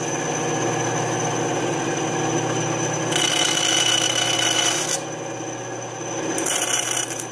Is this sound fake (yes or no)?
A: no